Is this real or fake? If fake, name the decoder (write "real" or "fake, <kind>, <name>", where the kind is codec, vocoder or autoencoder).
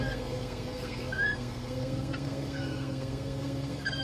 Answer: fake, codec, SNAC